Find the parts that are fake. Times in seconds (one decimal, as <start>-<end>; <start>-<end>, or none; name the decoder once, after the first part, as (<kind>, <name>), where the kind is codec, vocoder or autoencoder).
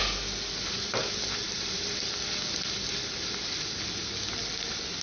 none